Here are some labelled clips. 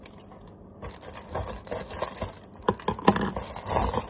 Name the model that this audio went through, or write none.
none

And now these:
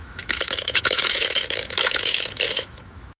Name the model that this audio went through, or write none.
autoencoder, DAC-VAE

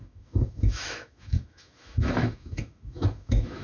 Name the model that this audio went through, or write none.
autoencoder, DAC-VAE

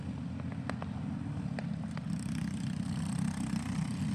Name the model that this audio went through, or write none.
none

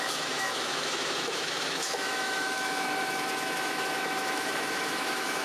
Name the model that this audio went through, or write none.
autoencoder, DAC-VAE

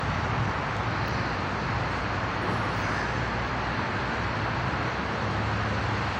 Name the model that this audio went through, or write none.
none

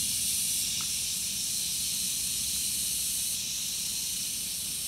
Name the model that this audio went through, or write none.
none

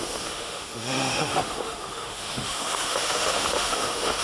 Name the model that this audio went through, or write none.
autoencoder, DAC-VAE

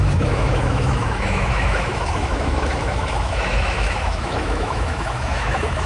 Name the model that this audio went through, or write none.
autoencoder, DAC-VAE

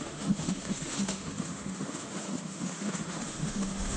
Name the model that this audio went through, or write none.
autoencoder, DAC-VAE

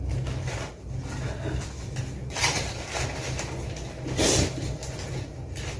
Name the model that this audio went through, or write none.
none